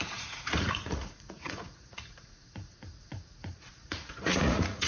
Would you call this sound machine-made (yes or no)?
yes